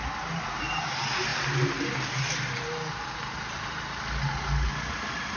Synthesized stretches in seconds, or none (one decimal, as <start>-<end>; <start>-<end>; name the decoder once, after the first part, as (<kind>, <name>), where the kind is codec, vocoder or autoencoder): none